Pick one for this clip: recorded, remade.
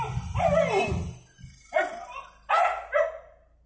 recorded